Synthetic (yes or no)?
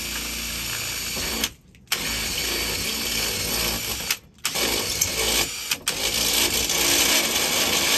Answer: no